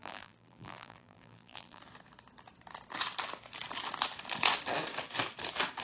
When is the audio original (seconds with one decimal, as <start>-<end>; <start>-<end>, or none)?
1.8-5.8